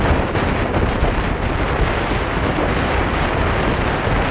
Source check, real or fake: real